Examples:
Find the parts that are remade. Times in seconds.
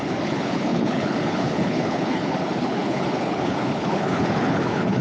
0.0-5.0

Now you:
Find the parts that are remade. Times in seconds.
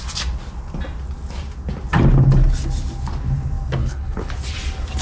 3.8-4.3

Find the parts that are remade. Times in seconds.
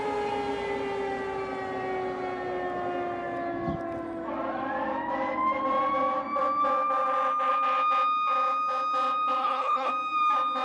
9.4-9.9